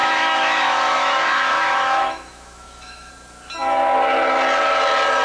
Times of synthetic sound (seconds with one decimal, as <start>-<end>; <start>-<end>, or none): 0.0-3.1